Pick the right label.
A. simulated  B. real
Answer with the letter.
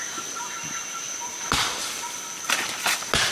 B